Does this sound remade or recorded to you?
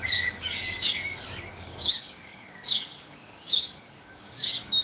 remade